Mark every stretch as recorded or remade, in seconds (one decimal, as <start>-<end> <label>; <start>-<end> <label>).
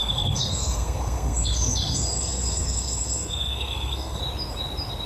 0.0-4.2 remade; 4.2-5.1 recorded